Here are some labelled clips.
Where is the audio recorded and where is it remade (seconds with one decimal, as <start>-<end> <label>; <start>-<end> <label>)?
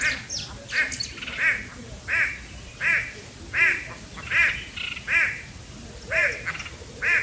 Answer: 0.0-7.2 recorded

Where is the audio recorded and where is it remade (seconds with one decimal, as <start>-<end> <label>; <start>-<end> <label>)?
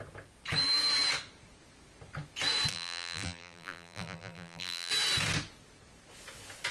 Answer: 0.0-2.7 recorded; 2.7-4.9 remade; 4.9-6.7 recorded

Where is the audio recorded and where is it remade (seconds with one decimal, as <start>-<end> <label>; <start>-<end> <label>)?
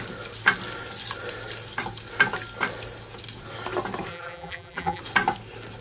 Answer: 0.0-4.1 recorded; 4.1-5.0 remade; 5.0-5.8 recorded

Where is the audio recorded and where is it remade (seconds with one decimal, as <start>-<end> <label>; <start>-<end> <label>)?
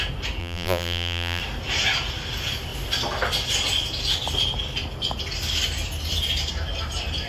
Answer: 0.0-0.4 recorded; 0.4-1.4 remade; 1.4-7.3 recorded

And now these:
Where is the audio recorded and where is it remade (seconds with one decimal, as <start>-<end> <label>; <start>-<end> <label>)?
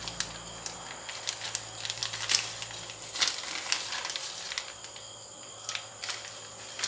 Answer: 0.0-6.9 recorded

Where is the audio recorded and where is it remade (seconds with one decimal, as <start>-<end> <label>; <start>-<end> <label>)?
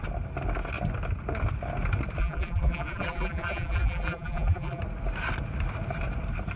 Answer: 0.0-2.2 recorded; 2.2-4.8 remade; 4.8-6.6 recorded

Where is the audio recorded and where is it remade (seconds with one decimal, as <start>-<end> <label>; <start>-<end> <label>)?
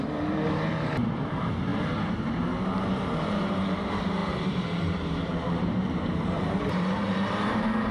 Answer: 0.0-1.7 remade; 1.7-2.3 recorded; 2.3-7.9 remade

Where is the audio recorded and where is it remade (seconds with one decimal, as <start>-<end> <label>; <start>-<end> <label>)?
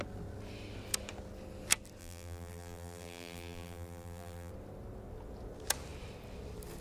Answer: 0.0-2.0 recorded; 2.0-4.5 remade; 4.5-6.8 recorded